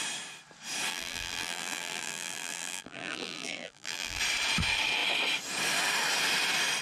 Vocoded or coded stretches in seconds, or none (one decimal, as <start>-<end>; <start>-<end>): 0.9-4.2